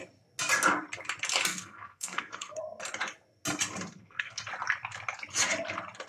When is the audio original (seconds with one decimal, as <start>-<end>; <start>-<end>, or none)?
0.0-1.5; 2.6-3.9; 4.4-6.1